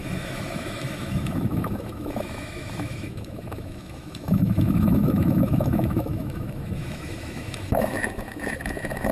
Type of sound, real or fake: fake